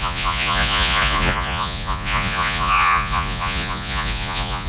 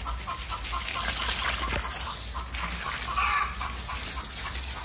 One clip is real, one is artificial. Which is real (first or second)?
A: second